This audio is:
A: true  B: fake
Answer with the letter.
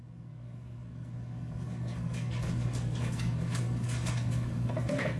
B